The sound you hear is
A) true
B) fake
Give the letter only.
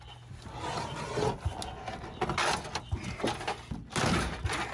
A